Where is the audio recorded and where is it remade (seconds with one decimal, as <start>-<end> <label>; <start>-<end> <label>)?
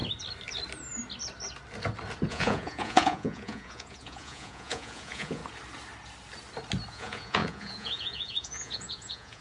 0.0-2.3 recorded; 2.3-5.4 remade; 5.4-6.9 recorded; 6.9-9.4 remade